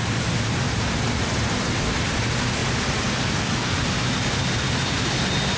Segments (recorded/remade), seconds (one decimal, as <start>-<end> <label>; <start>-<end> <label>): 0.0-5.6 recorded